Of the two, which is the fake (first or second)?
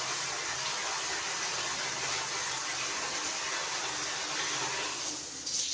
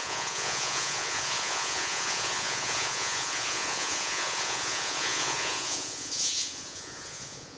second